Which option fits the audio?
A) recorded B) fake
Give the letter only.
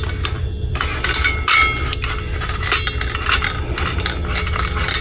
A